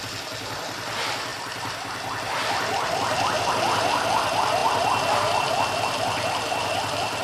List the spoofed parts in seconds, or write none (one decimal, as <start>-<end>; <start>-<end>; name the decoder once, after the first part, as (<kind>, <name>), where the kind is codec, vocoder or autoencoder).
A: none